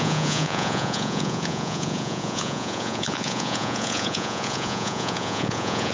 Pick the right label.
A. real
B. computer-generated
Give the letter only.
B